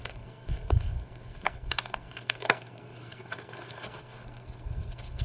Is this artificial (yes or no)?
yes